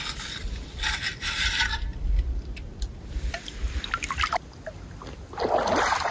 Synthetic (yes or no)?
no